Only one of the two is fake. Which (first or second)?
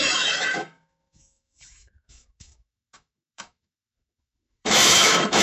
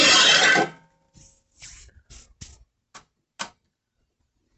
first